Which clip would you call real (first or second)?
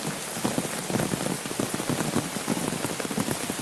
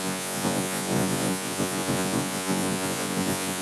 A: first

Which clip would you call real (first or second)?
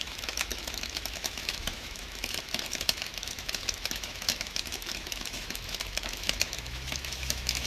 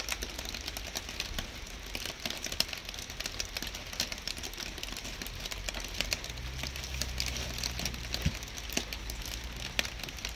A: second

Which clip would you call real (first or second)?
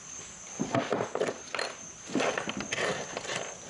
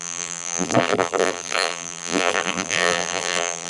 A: first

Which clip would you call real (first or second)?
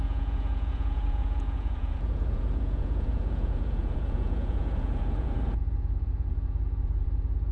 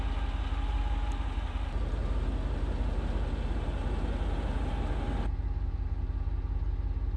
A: second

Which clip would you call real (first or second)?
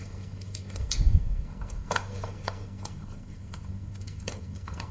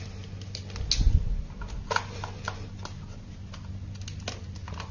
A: second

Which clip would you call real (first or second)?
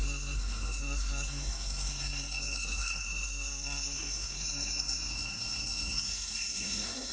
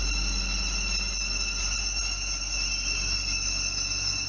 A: second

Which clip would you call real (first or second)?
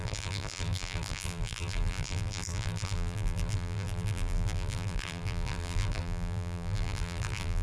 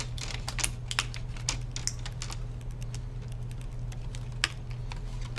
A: second